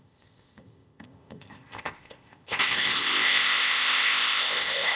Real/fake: fake